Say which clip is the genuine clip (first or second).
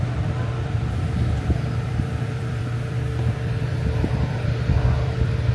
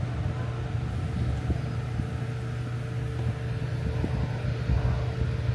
second